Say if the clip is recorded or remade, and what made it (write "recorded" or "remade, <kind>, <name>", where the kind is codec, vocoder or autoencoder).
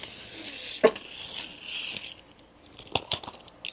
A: recorded